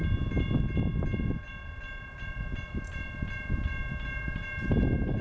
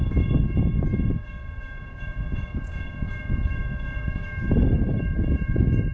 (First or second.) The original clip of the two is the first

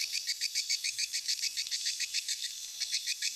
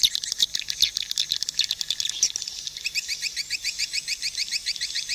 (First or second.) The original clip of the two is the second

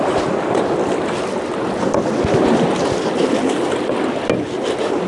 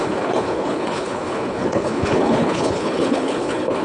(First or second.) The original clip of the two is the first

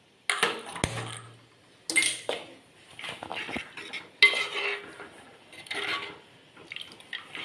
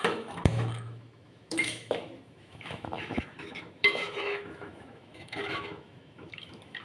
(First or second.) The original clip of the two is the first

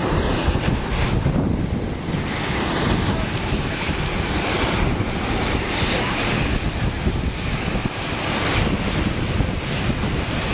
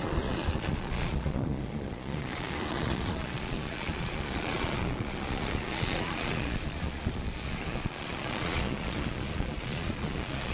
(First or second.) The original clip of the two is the first